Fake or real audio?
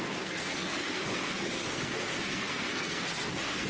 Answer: fake